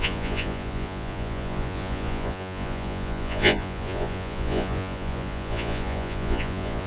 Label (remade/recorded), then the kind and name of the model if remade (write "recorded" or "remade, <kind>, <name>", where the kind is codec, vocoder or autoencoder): remade, vocoder, Vocos